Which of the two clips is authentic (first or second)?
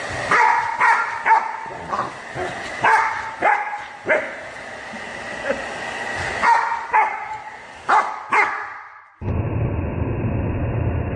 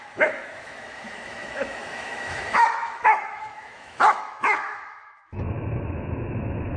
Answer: first